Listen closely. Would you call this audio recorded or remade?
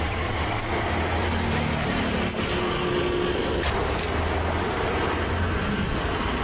recorded